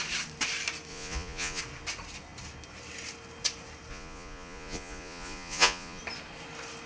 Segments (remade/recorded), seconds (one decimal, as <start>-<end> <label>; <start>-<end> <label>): 0.0-0.9 recorded; 0.9-1.6 remade; 1.6-3.9 recorded; 3.9-6.0 remade; 6.0-6.9 recorded